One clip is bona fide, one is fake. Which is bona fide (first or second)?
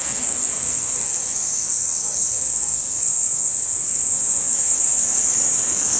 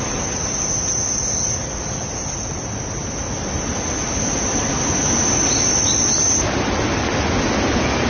second